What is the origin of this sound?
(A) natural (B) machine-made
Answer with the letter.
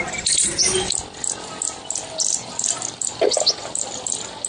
A